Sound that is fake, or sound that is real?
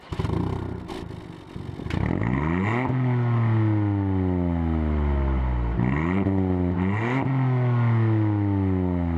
real